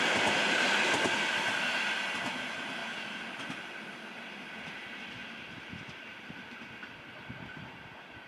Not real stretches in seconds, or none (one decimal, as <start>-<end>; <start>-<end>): 5.2-6.6